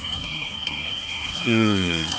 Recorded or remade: remade